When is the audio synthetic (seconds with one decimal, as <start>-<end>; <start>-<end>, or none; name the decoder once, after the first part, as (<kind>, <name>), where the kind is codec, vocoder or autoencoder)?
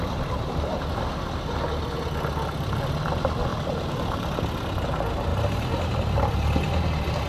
3.5-4.1 (vocoder, BigVGAN v2); 5.3-6.2